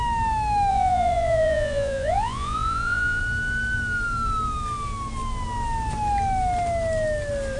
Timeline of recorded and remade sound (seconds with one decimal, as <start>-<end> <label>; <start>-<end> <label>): 0.0-0.7 recorded; 0.7-3.2 remade; 3.2-7.6 recorded